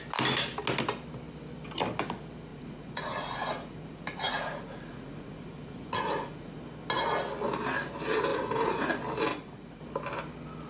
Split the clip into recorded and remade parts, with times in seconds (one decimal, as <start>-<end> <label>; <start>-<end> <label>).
0.0-2.5 recorded; 2.5-6.6 remade; 6.6-8.3 recorded; 8.3-8.9 remade; 8.9-9.3 recorded; 9.3-9.8 remade; 9.8-10.7 recorded